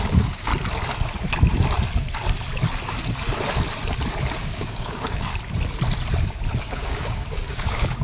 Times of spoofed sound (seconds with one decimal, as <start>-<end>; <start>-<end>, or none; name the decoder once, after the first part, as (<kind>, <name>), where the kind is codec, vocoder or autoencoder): 0.0-0.5 (codec, DAC); 4.3-5.3; 6.6-8.0